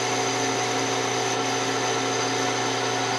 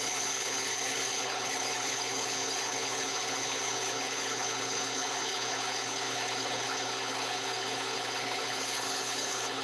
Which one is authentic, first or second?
first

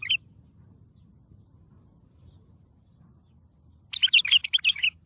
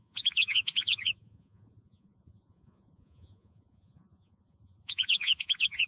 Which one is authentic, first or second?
first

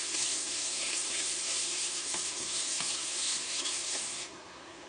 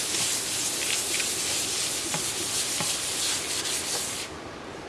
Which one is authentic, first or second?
second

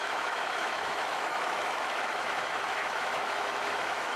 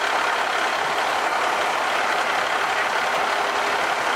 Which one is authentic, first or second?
second